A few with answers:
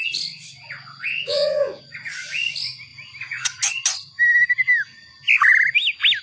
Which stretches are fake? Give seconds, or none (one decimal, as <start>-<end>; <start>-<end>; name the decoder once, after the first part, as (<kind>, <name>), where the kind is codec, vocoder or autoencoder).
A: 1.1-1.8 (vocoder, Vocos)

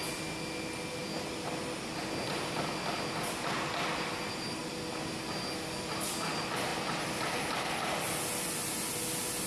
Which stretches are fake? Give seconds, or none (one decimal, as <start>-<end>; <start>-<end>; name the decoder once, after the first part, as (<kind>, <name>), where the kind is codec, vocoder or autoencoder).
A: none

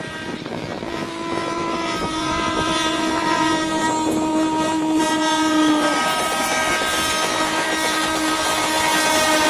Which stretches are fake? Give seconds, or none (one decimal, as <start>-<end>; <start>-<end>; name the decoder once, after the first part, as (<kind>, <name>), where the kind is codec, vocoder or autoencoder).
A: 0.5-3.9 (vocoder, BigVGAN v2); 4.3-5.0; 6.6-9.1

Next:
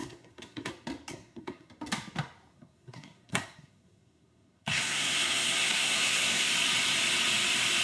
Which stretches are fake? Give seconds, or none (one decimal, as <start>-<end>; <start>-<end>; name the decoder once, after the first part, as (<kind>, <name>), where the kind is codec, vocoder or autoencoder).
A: 0.0-0.7 (codec, SNAC); 1.1-1.7; 2.5-6.5

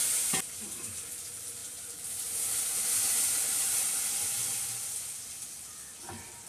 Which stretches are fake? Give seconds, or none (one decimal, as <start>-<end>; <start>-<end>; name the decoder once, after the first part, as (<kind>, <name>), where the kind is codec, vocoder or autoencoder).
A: none

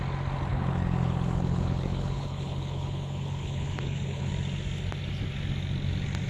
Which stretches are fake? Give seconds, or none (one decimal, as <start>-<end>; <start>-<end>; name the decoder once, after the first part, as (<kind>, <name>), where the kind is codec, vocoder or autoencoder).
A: 0.5-4.3 (codec, HILCodec)